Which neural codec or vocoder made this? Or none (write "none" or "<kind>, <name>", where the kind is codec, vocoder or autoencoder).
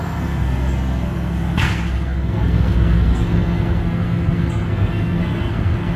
codec, SNAC